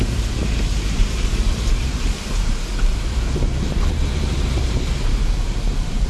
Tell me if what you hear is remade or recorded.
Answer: remade